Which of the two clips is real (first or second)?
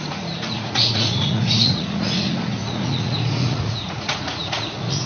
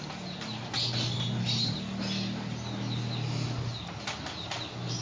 second